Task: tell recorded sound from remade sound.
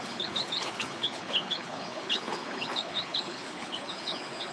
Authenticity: remade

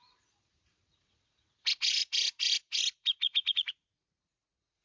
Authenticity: remade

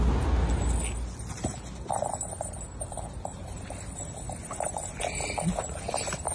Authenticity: recorded